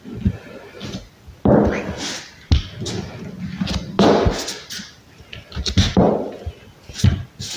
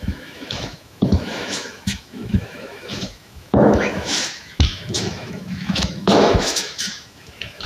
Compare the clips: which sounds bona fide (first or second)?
first